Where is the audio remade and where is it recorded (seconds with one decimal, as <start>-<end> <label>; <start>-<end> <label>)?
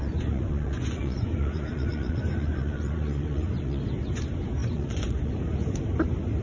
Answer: 0.0-3.8 remade; 3.8-4.6 recorded; 4.6-5.3 remade; 5.3-6.4 recorded